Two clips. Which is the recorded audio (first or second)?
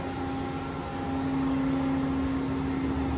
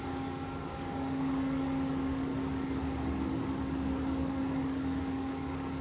first